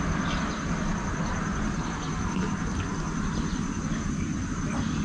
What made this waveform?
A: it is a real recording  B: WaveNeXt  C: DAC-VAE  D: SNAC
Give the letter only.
A